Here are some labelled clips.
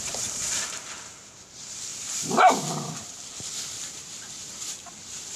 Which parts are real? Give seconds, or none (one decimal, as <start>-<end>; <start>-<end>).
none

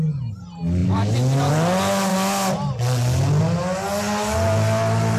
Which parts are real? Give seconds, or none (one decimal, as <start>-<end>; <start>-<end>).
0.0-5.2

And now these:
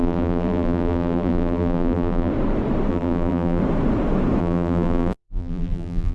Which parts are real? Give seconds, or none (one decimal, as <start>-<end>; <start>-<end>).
2.3-2.9; 3.6-4.4

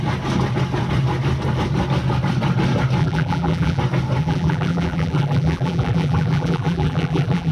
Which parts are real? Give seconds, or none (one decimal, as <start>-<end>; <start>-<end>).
0.0-3.0; 3.8-4.2